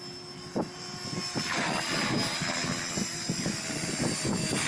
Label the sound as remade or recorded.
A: recorded